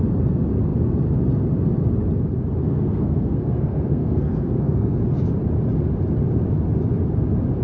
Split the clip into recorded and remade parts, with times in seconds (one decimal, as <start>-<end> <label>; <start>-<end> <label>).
0.0-2.6 recorded; 2.6-5.0 remade; 5.0-7.6 recorded